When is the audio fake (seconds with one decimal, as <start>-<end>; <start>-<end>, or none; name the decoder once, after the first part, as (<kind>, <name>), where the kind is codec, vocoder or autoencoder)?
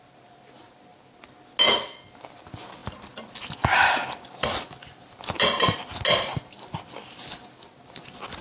none